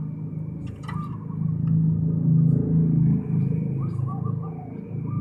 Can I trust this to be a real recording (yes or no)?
yes